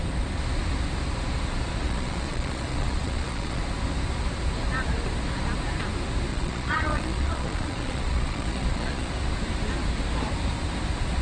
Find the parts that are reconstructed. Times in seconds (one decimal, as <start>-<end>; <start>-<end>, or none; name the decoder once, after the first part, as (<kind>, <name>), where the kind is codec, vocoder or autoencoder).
1.8-3.6 (vocoder, Vocos); 6.3-9.1